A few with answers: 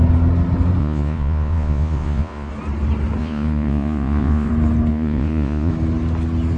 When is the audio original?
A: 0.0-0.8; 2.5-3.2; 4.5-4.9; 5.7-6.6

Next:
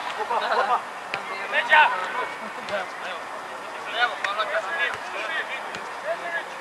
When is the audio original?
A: 0.7-6.6

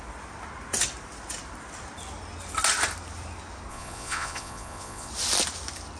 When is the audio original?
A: 0.0-3.7; 5.1-6.0

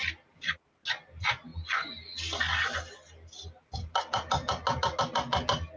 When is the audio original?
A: 0.0-5.8

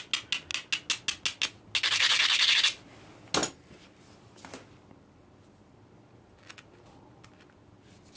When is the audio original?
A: 0.0-8.2

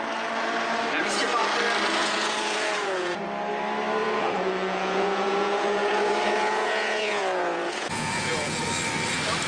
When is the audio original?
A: 0.0-2.0; 3.2-4.0; 8.6-9.5

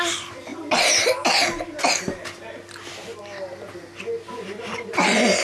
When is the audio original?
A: 0.0-5.4